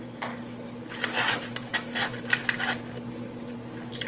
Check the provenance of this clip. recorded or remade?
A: recorded